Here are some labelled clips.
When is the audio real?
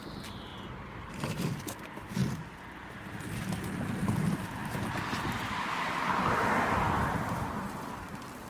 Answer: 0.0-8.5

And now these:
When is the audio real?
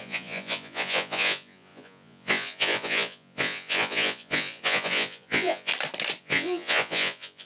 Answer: 5.7-6.2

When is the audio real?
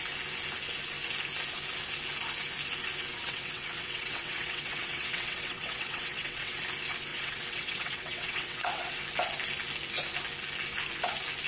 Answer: 0.0-3.1; 6.6-7.1; 9.0-11.5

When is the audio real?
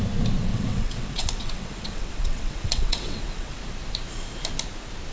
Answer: 0.0-0.5; 3.6-5.1